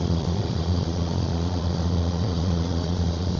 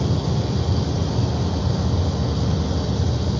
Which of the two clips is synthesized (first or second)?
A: first